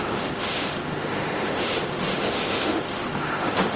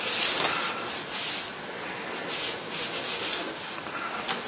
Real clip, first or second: second